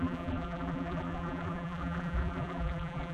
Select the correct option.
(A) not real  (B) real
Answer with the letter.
A